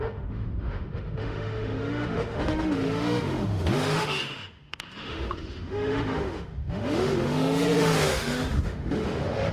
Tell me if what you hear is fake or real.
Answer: fake